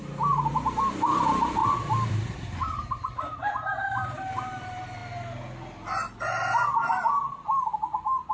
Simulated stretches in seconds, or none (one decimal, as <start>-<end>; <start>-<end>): 0.0-1.6; 2.1-5.0